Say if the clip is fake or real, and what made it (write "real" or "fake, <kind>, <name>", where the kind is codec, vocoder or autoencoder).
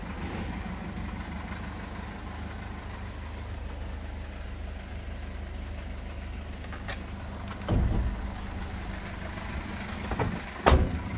real